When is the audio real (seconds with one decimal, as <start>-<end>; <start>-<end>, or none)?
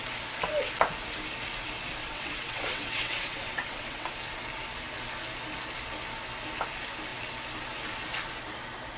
0.0-2.0; 4.1-9.0